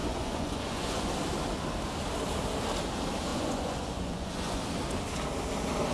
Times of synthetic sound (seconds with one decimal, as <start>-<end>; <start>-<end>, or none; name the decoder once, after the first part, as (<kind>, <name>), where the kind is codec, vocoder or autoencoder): 0.0-1.1 (vocoder, Vocos); 3.3-4.6